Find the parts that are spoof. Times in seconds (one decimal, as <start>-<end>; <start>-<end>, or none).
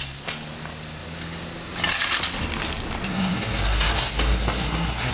3.1-5.1